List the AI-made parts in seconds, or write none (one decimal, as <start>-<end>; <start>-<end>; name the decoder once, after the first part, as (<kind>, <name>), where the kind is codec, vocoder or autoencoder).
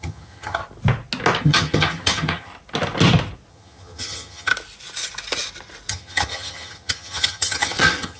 0.0-0.6 (vocoder, HiFi-GAN); 1.4-2.5; 3.5-4.5; 5.9-8.2